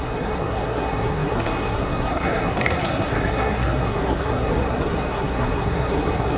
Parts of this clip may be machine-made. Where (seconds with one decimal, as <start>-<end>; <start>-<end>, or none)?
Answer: 0.0-6.4